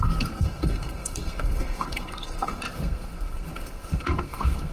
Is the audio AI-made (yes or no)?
yes